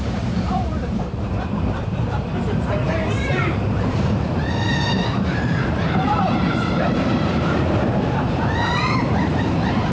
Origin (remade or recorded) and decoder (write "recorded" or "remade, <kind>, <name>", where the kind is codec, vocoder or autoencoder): remade, vocoder, BigVGAN v2